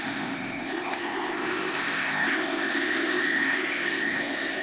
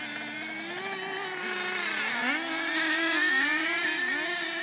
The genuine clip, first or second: second